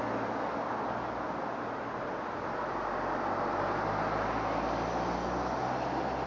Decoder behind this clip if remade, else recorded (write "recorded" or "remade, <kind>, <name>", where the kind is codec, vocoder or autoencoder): recorded